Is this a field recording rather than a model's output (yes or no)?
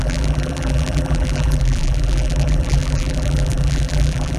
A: no